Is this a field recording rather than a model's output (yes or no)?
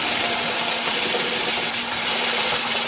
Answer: no